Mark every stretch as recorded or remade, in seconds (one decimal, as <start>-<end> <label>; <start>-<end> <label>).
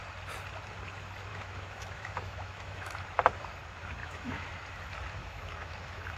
0.0-1.3 recorded; 1.3-2.9 remade; 2.9-4.0 recorded; 4.0-4.5 remade; 4.5-5.2 recorded; 5.2-6.2 remade